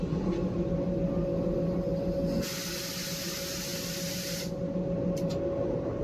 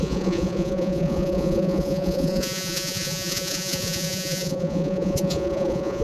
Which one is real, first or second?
first